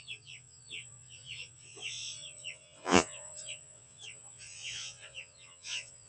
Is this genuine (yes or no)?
no